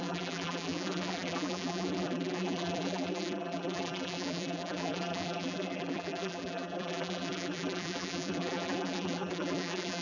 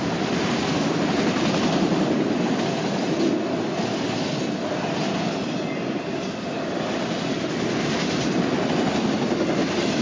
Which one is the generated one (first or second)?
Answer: first